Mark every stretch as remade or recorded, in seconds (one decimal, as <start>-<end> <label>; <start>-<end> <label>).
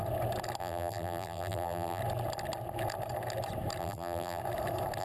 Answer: 0.0-0.6 recorded; 0.6-2.0 remade; 2.0-3.8 recorded; 3.8-4.4 remade; 4.4-5.0 recorded